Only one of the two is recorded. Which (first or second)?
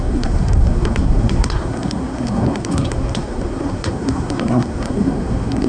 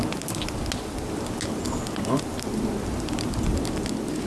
second